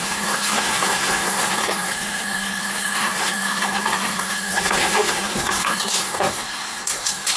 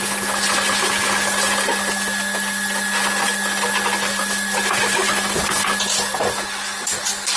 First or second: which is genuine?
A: second